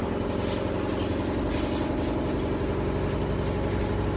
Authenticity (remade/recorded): recorded